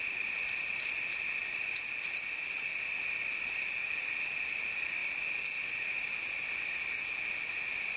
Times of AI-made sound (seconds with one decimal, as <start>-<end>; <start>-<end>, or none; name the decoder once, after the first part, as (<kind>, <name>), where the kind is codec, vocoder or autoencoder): none